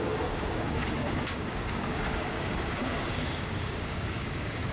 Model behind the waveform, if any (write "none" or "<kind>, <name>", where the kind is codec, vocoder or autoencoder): codec, DAC